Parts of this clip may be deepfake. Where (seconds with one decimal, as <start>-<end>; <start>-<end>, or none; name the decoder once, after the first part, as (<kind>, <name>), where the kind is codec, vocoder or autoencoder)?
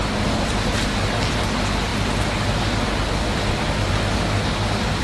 0.0-0.8 (vocoder, BigVGAN v2)